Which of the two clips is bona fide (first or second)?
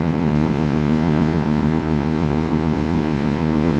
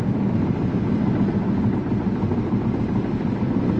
second